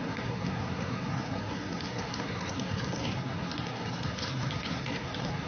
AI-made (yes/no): yes